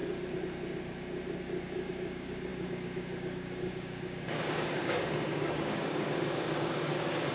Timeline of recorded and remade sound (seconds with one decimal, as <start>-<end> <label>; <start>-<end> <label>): 0.0-1.6 recorded; 1.6-7.3 remade